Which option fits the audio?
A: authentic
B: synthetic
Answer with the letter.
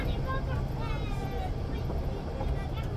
A